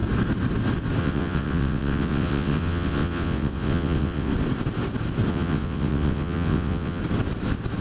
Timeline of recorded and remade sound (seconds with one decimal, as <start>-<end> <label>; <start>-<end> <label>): 0.0-1.0 recorded; 1.0-4.3 remade; 4.3-5.3 recorded; 5.3-7.0 remade; 7.0-7.8 recorded